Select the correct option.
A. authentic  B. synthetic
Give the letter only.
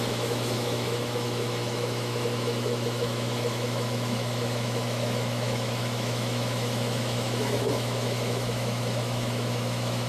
B